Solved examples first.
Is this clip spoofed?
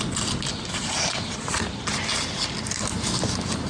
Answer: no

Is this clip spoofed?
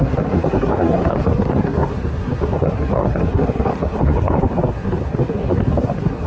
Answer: yes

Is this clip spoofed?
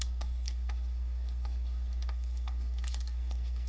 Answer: yes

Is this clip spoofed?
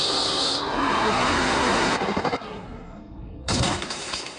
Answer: yes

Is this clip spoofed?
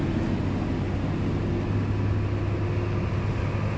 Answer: no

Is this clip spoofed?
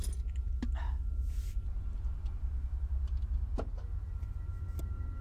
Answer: no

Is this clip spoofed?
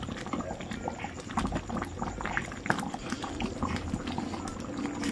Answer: no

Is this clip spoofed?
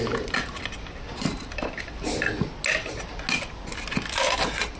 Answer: no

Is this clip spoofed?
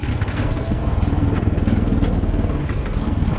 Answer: yes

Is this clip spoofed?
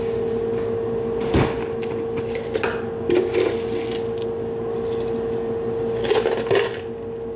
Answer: no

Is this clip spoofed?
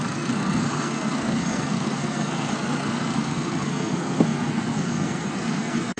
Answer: yes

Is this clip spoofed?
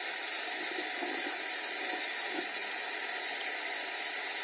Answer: no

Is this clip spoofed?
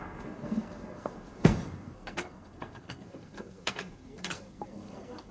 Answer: yes